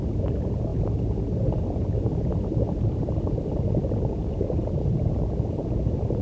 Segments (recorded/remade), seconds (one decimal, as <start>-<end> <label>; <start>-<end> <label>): 0.0-6.2 recorded